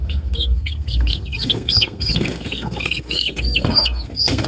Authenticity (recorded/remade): remade